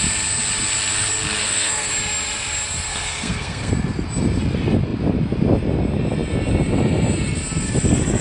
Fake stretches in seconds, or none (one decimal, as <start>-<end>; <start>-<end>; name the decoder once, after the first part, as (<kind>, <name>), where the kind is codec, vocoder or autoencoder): 1.4-1.9 (codec, SNAC); 2.9-3.7